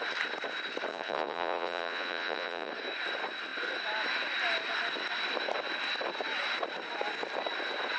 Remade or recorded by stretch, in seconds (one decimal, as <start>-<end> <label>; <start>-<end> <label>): 0.0-0.9 recorded; 0.9-2.7 remade; 2.7-8.0 recorded